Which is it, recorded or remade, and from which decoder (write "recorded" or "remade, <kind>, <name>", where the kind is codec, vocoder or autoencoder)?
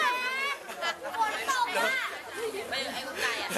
recorded